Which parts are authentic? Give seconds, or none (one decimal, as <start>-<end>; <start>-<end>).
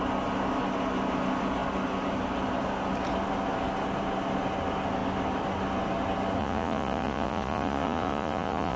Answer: 0.0-6.4